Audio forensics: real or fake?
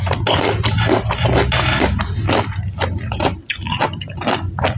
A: real